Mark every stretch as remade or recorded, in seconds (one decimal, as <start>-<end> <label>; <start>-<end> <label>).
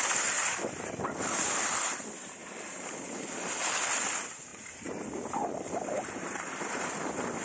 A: 0.0-7.4 recorded